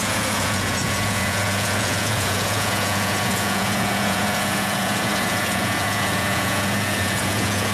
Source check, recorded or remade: remade